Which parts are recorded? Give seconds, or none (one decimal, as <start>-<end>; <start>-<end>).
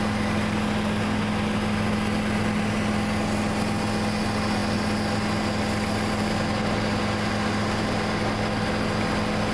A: 0.0-9.5